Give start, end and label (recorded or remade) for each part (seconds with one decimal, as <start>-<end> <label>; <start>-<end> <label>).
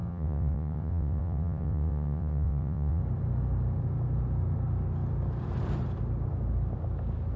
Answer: 0.0-3.0 remade; 3.0-7.4 recorded